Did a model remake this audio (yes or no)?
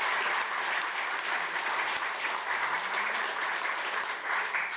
yes